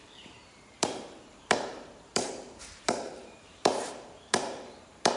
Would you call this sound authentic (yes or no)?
no